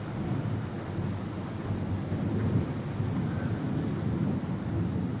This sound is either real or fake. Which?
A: real